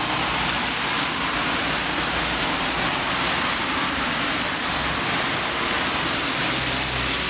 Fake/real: real